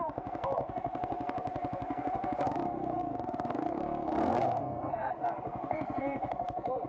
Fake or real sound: fake